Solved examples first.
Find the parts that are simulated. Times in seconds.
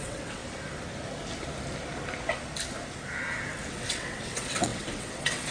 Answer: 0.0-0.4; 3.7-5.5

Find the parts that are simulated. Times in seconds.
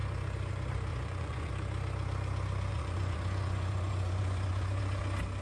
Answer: 0.9-1.5; 2.7-4.8